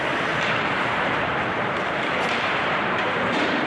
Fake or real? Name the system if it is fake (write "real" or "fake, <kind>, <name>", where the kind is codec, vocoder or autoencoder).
fake, vocoder, BigVGAN v2